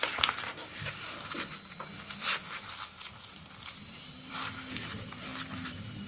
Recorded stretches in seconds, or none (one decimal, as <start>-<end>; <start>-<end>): 0.0-6.1